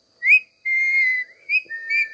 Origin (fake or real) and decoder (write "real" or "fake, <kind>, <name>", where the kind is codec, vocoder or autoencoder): real